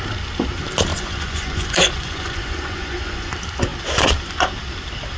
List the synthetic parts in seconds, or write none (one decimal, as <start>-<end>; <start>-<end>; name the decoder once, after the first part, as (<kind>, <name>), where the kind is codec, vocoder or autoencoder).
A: 0.9-3.3 (vocoder, Vocos)